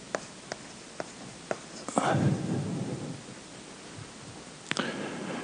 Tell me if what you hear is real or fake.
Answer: real